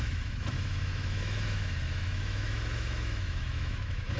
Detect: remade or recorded remade